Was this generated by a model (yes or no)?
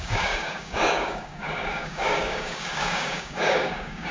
yes